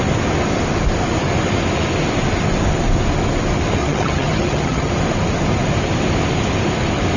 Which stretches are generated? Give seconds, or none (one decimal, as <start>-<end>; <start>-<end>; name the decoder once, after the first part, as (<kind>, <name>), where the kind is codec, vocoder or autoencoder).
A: 3.8-4.9 (vocoder, HiFi-GAN)